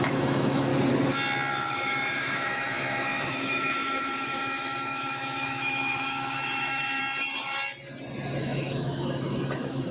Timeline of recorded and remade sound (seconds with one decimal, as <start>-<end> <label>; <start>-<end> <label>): 0.0-0.7 remade; 0.7-1.5 recorded; 1.5-7.0 remade; 7.0-8.4 recorded; 8.4-9.9 remade